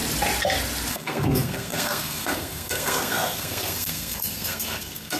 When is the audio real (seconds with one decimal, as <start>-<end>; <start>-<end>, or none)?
0.0-0.9